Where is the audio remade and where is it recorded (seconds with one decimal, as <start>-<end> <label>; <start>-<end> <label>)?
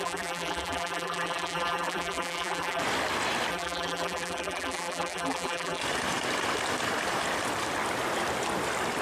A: 0.0-2.8 remade; 2.8-3.5 recorded; 3.5-5.8 remade; 5.8-9.0 recorded